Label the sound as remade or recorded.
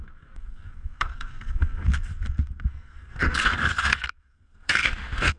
remade